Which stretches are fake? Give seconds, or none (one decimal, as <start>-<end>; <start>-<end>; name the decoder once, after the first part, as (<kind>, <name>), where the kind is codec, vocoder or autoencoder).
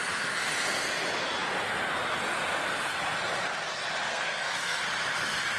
4.1-4.8 (codec, SNAC)